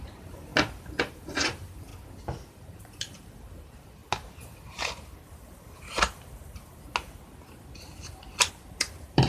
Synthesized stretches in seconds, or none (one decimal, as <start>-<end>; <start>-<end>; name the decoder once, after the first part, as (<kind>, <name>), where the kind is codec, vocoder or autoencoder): 0.0-0.5 (vocoder, BigVGAN v2); 1.1-1.9; 2.5-4.0; 8.5-9.3